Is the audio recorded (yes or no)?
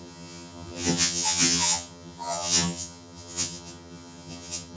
no